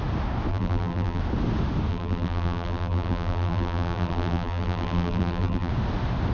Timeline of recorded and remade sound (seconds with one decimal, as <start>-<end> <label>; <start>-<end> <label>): 0.0-0.5 recorded; 0.5-1.2 remade; 1.2-1.9 recorded; 1.9-5.7 remade; 5.7-6.3 recorded